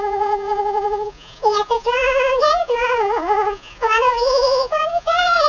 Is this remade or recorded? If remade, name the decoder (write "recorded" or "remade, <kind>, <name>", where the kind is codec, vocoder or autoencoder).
remade, vocoder, Vocos